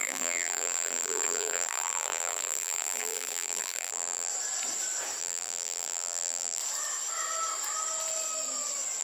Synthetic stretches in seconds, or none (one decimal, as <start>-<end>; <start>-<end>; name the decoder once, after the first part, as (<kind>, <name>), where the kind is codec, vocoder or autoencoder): 0.0-4.3 (vocoder, BigVGAN v2); 5.2-6.6